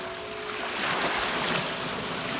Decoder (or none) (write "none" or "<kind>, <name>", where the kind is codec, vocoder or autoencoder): none